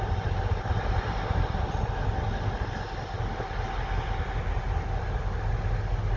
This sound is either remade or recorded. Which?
recorded